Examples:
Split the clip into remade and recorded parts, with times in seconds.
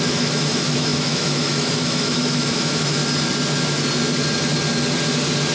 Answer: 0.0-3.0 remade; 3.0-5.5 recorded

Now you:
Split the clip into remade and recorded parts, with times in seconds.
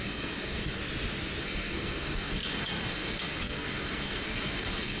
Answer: 0.0-0.8 remade; 0.8-1.4 recorded; 1.4-5.0 remade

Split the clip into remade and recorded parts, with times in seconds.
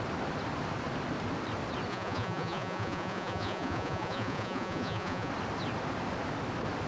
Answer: 0.0-1.9 recorded; 1.9-5.3 remade; 5.3-6.9 recorded